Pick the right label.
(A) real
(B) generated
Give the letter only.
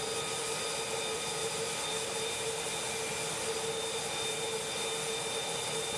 A